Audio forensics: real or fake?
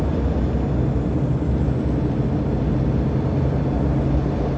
real